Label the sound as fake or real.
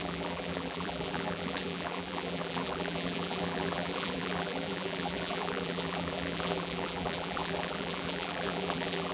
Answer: fake